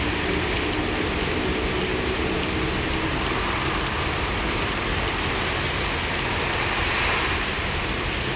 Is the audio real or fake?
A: real